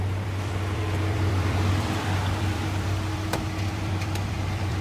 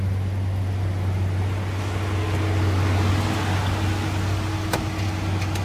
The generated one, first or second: first